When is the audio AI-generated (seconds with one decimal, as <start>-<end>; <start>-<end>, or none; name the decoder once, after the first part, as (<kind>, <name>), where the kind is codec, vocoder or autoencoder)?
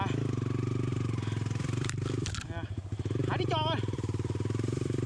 0.9-2.8 (vocoder, BigVGAN v2); 3.2-5.1